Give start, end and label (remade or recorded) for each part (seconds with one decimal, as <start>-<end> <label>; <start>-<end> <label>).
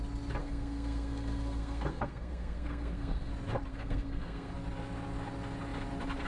0.0-0.4 recorded; 0.4-3.3 remade; 3.3-3.7 recorded; 3.7-4.5 remade; 4.5-6.3 recorded